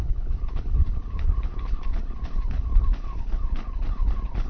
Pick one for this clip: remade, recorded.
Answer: remade